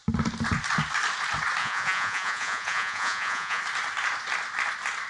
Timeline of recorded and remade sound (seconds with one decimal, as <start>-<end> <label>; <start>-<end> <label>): 0.0-1.6 recorded; 1.6-3.6 remade; 3.6-5.1 recorded